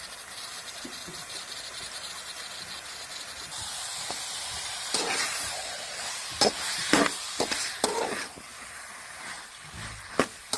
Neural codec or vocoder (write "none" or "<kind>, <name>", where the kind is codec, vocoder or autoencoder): none